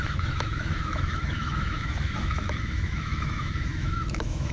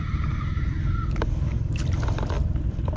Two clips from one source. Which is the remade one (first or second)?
first